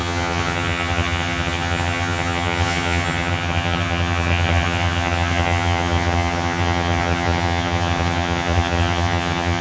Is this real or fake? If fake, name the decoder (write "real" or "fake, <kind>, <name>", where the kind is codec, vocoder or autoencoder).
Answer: fake, vocoder, HiFi-GAN